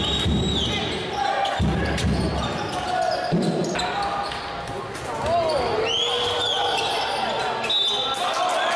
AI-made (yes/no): no